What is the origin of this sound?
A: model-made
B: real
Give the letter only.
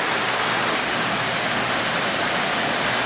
B